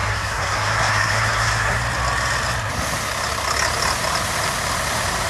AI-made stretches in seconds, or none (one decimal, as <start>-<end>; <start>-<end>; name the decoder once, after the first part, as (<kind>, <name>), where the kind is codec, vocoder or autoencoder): 0.0-1.8 (codec, SNAC)